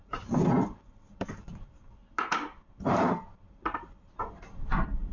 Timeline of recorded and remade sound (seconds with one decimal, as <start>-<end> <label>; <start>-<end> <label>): 0.0-2.0 remade; 2.0-2.6 recorded; 2.6-5.1 remade